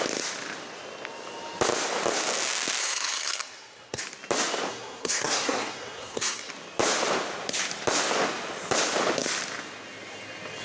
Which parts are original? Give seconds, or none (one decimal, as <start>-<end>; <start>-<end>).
0.0-2.8; 4.0-4.7; 6.5-10.6